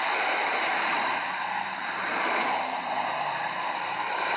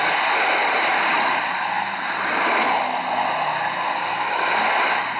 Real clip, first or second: second